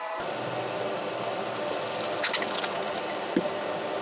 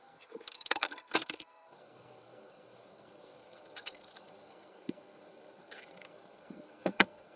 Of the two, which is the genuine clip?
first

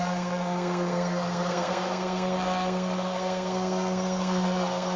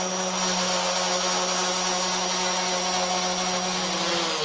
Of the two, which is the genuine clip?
second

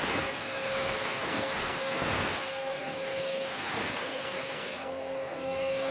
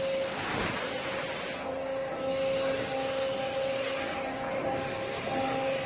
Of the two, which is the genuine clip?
second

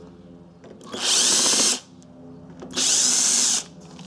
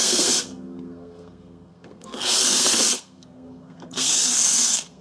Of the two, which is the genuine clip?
first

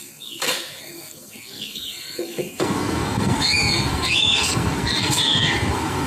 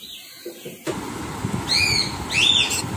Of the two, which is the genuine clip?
second